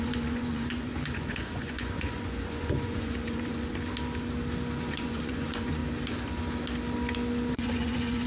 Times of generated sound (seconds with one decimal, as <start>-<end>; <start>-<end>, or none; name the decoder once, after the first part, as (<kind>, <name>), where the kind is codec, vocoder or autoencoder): 0.0-3.7 (vocoder, Vocos); 4.9-5.8; 7.5-8.3